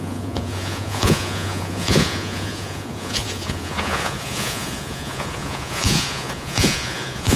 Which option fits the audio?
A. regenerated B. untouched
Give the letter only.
A